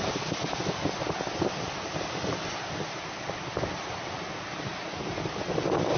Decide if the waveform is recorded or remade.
recorded